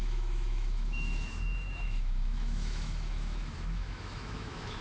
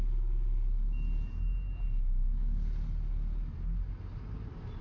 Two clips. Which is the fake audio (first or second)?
first